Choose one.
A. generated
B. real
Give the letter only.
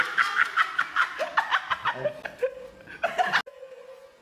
B